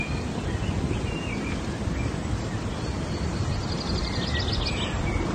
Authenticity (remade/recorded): recorded